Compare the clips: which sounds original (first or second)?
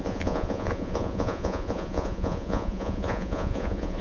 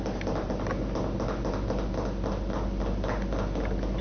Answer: second